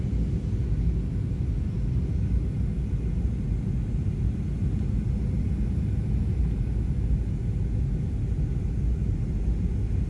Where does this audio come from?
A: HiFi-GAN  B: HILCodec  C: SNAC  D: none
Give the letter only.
D